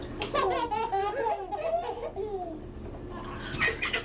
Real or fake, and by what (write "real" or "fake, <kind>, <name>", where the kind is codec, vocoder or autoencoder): real